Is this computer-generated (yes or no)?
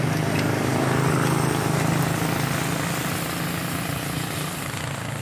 no